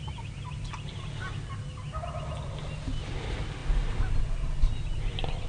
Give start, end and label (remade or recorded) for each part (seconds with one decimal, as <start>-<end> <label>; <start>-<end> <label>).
0.0-5.5 recorded